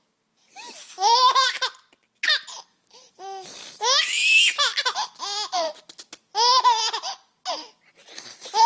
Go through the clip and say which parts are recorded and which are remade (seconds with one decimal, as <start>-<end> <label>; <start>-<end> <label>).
0.0-8.7 recorded